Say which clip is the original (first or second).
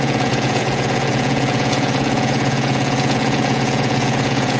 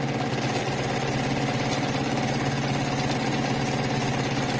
second